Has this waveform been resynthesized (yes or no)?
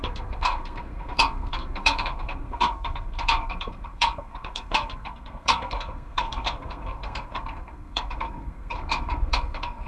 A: yes